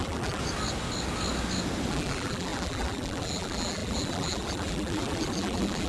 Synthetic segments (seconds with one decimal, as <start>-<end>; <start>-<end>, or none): 0.0-0.4; 1.9-5.9